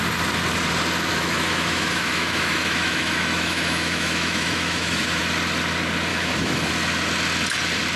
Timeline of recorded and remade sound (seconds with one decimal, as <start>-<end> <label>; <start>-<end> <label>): 0.0-1.1 recorded; 1.1-5.2 remade; 5.2-6.1 recorded; 6.1-6.7 remade; 6.7-8.0 recorded